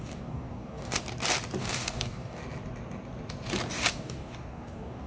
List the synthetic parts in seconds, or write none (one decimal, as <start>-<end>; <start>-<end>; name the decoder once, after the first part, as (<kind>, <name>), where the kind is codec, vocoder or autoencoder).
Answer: 0.0-1.0 (codec, DAC); 1.6-2.4; 3.9-5.1